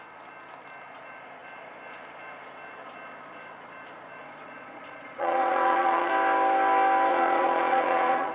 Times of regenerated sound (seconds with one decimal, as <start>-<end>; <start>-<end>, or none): 4.2-6.1; 7.1-8.3